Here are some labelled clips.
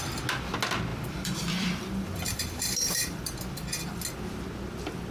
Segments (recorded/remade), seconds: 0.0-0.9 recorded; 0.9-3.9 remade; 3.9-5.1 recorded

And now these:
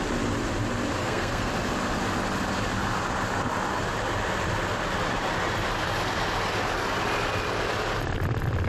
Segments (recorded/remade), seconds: 0.0-1.0 recorded; 1.0-1.5 remade; 1.5-8.7 recorded

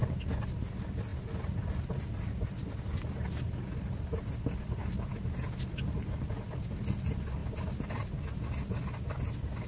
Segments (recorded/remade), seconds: 0.0-9.7 recorded

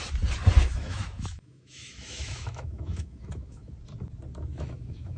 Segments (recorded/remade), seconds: 0.0-0.6 recorded; 0.6-3.7 remade; 3.7-4.5 recorded; 4.5-5.2 remade

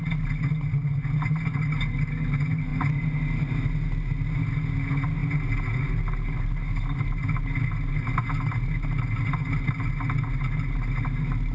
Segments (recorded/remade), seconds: 0.0-11.5 recorded